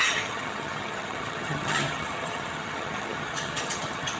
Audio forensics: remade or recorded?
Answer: remade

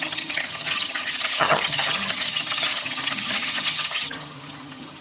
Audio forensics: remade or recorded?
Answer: remade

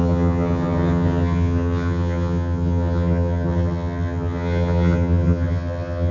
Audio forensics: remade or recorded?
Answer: remade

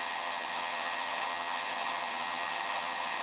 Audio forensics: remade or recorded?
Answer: remade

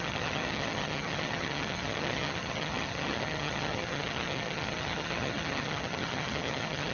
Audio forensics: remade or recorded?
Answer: remade